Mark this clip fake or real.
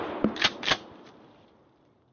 real